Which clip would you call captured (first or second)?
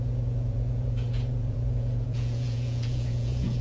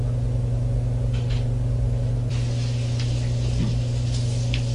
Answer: second